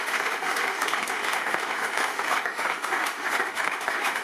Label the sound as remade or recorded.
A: remade